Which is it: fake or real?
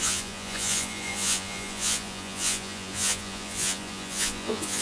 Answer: fake